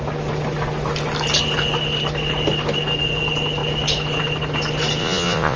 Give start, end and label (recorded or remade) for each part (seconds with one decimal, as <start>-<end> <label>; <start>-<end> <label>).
0.0-5.0 recorded; 5.0-5.6 remade